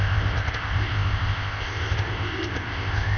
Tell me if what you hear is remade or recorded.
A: remade